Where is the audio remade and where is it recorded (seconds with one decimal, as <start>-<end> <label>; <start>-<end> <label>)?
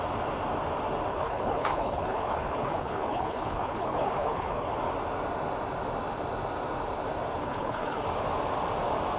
0.0-1.1 recorded; 1.1-4.7 remade; 4.7-7.4 recorded; 7.4-8.0 remade; 8.0-9.2 recorded